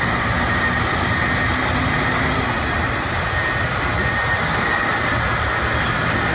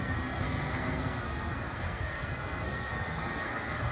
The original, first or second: first